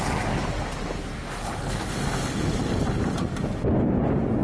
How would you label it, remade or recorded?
recorded